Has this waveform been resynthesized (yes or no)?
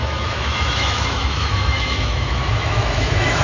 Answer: yes